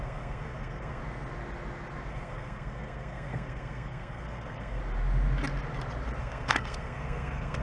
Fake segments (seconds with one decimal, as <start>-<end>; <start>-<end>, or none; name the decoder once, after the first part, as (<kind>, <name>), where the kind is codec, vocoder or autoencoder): 0.0-1.0 (codec, SNAC); 2.1-4.8; 6.2-7.6